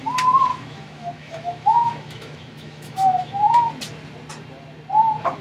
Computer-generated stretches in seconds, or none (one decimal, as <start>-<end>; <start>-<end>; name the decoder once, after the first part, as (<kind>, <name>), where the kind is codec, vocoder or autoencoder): 0.5-3.7 (autoencoder, DAC-VAE)